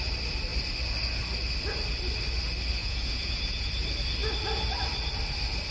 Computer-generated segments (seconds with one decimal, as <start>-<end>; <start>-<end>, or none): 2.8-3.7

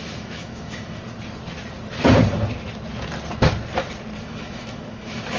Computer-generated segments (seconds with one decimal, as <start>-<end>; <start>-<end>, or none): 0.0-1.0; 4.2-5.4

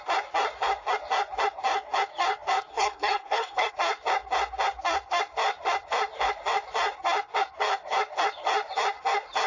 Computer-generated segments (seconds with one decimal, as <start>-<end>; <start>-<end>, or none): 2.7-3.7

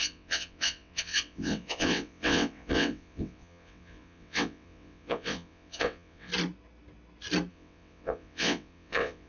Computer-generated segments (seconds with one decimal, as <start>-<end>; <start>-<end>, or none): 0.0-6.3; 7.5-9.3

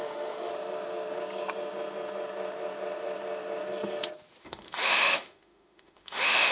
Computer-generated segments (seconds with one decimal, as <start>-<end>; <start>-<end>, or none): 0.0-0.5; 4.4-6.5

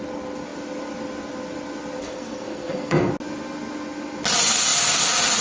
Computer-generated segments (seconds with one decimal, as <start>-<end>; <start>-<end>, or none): 2.0-3.1

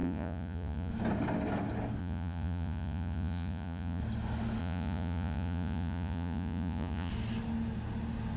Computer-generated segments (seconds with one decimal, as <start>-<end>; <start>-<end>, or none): 0.0-0.9; 2.0-4.0; 4.6-7.1